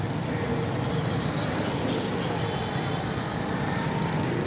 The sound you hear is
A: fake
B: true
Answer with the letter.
B